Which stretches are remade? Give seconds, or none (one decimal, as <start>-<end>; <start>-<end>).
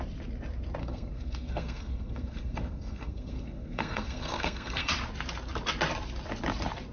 0.8-4.9